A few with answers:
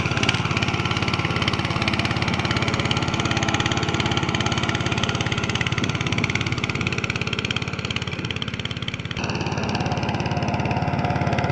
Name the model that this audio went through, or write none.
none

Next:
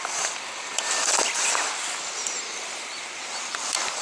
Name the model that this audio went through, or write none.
vocoder, BigVGAN v2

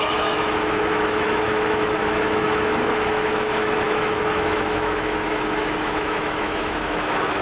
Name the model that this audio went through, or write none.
autoencoder, DAC-VAE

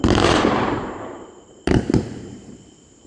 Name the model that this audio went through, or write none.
vocoder, BigVGAN v2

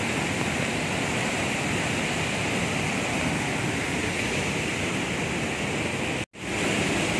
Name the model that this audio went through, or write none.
none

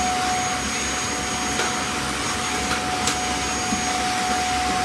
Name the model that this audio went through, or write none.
none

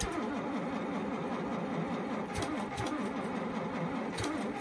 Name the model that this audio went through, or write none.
vocoder, BigVGAN v2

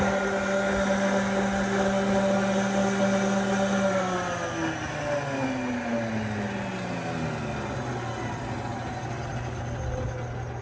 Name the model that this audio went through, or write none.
none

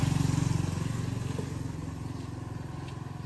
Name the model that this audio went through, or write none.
none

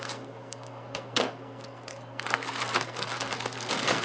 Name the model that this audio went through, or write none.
codec, SNAC